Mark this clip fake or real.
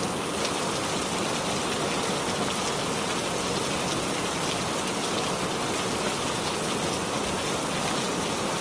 real